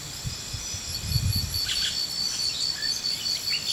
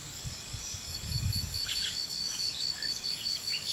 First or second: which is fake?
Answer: second